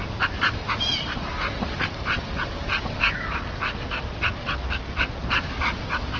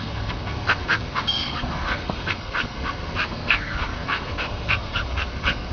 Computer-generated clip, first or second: second